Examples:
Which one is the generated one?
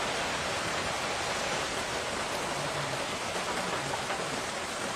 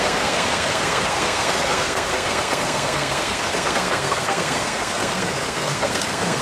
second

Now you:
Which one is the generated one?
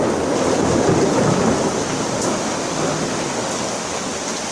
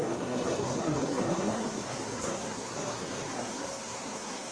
second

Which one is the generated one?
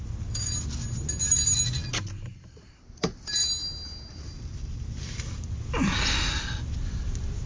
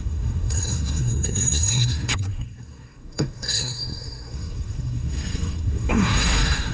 second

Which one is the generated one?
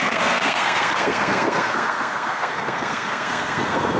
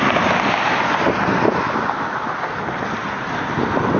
first